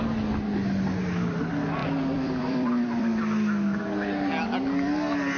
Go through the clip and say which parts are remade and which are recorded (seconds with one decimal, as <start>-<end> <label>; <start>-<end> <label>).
0.0-1.8 recorded; 1.8-3.2 remade; 3.2-5.4 recorded